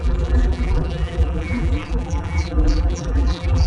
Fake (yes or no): yes